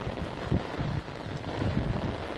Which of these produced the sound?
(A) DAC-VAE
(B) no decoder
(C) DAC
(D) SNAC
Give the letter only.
B